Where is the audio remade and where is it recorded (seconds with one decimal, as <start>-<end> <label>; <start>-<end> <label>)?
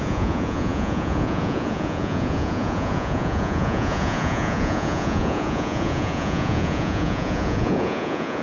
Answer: 0.0-8.4 remade